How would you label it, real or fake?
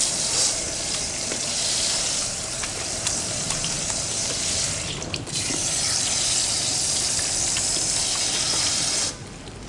fake